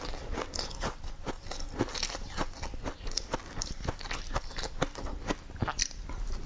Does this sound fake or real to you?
real